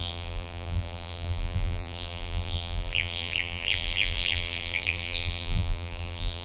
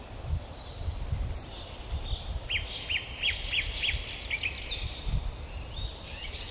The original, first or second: second